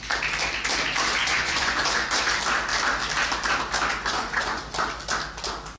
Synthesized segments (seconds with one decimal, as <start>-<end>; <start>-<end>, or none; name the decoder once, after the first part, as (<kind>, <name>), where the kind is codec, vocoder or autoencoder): 1.2-2.3 (vocoder, Vocos); 4.0-4.6